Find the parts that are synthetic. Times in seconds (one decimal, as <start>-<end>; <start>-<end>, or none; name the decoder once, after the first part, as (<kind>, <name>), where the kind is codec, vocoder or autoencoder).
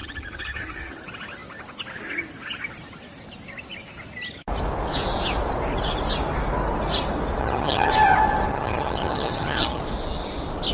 0.0-0.9 (vocoder, HiFi-GAN); 7.4-7.9; 8.5-9.8